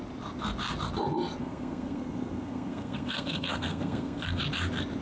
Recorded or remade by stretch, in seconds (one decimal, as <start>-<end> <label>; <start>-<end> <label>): 0.0-1.4 recorded; 1.4-4.4 remade; 4.4-5.0 recorded